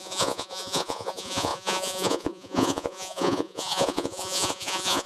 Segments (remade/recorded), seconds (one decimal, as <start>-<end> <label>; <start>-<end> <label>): 0.0-5.1 remade